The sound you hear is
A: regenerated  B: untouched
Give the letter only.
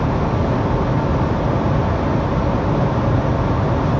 B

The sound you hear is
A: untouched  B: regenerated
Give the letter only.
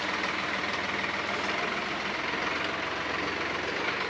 A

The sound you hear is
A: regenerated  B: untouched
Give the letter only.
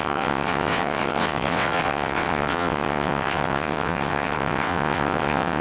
A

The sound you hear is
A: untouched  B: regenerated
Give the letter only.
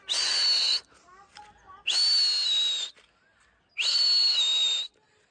A